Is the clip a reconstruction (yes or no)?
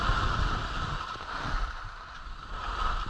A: no